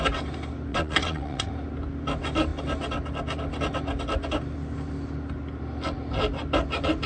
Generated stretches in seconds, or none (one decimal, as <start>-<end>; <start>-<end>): 0.7-1.5